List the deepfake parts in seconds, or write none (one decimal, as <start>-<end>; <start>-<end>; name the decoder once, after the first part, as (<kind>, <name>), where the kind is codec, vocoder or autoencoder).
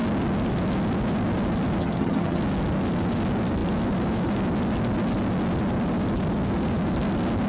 1.8-2.4 (vocoder, HiFi-GAN)